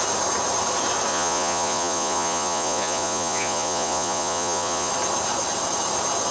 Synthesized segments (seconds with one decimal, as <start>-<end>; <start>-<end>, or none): 1.1-4.9